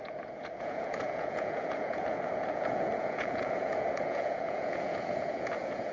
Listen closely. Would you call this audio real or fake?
fake